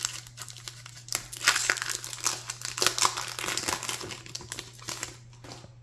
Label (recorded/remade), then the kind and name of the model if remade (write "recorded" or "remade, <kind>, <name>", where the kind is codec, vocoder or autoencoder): recorded